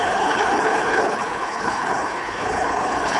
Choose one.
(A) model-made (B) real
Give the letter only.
A